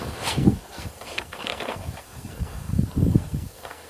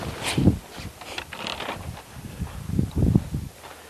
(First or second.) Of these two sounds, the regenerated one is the first